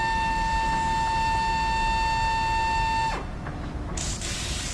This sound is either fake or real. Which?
real